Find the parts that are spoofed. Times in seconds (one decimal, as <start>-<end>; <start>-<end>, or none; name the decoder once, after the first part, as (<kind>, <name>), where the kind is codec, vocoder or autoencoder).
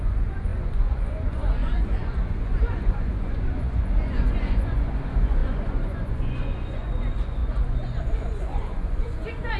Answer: 0.0-9.6 (vocoder, Vocos)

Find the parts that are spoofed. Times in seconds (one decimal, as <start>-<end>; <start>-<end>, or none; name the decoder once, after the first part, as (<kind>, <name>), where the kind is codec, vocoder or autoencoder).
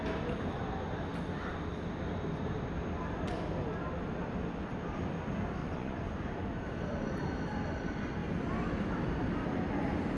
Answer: 5.6-6.5 (vocoder, Vocos)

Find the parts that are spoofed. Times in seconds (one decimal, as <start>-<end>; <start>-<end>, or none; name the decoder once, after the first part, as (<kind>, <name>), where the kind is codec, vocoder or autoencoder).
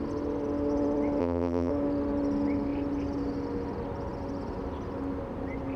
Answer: 1.2-1.7 (vocoder, BigVGAN v2)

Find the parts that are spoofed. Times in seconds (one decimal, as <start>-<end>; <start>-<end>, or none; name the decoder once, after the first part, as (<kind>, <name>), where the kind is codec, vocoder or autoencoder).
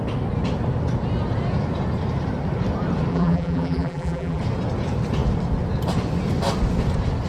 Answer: 3.1-4.4 (vocoder, BigVGAN v2)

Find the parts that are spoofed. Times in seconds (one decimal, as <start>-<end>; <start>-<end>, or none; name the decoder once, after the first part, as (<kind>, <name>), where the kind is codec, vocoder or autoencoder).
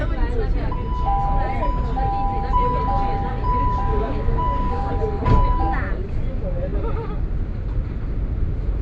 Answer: 3.9-4.9 (codec, DAC)